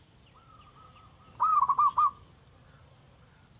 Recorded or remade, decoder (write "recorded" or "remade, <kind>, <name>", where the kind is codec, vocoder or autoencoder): recorded